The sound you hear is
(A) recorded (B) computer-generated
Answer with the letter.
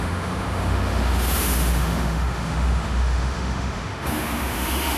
B